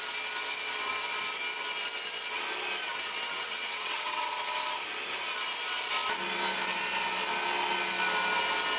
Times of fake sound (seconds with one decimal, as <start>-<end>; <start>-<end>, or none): 2.9-4.2